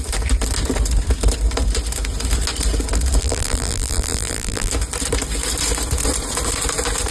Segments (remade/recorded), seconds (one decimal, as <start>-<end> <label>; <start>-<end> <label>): 0.0-3.2 recorded; 3.2-4.7 remade; 4.7-7.1 recorded